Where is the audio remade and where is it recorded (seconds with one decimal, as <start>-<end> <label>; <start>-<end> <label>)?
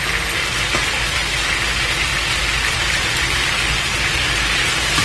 0.0-5.0 recorded